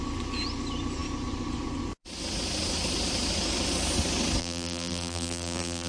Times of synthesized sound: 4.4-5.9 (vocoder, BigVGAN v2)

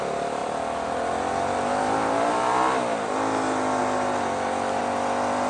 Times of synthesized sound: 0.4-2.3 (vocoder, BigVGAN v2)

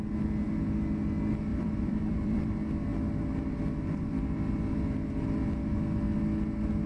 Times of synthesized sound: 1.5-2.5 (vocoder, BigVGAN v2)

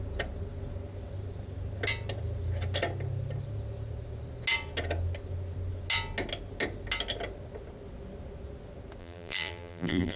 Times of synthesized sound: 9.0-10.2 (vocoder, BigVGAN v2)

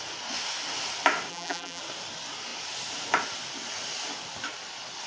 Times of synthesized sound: 1.3-1.8 (vocoder, BigVGAN v2)